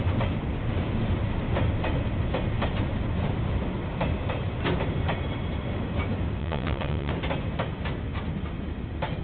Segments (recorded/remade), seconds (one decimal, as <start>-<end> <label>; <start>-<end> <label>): 0.0-6.4 recorded; 6.4-7.1 remade; 7.1-9.2 recorded